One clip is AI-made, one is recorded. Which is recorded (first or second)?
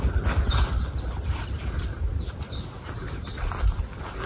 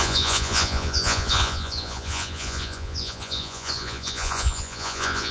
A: first